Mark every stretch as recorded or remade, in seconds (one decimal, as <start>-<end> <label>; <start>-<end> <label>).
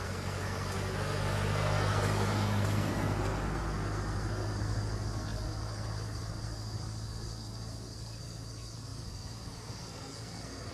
0.0-10.7 remade